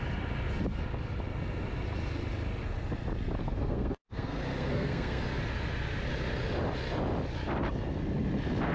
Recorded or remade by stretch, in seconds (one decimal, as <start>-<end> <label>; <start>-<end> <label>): 0.0-3.4 recorded; 3.4-5.2 remade; 5.2-8.7 recorded